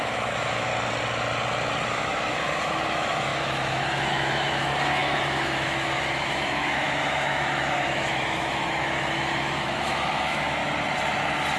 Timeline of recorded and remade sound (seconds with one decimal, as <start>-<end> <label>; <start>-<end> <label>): 0.0-0.7 remade; 0.7-1.9 recorded; 1.9-10.6 remade; 10.6-11.6 recorded